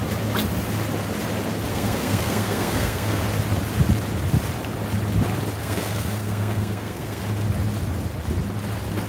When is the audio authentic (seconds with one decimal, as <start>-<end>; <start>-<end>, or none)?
0.0-1.7; 3.2-5.6; 7.2-9.1